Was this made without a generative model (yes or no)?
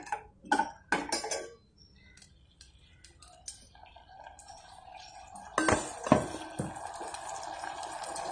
yes